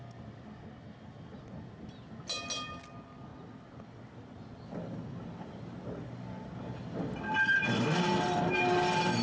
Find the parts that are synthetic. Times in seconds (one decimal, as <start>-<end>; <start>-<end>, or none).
none